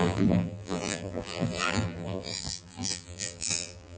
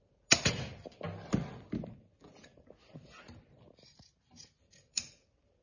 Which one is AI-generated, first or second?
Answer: first